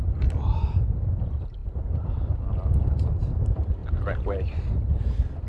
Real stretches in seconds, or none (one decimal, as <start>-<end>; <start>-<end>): 0.0-5.5